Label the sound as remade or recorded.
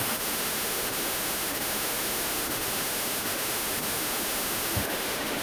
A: remade